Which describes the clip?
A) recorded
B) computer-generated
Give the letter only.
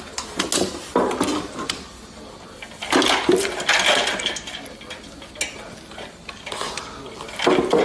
A